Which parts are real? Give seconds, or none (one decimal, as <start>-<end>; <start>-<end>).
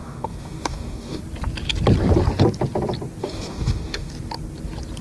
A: 1.2-3.2; 4.1-5.0